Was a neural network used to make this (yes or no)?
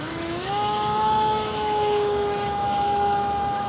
yes